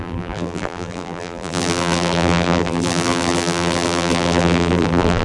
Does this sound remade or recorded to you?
remade